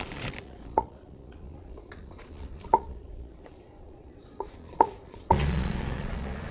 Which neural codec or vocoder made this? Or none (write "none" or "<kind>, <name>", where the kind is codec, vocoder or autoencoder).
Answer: vocoder, Vocos